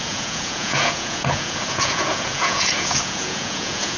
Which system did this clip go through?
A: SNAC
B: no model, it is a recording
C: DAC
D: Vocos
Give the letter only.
D